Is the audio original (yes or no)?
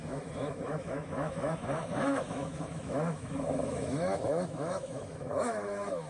no